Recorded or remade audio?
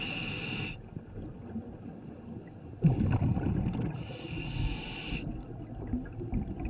recorded